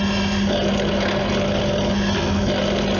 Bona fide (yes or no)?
yes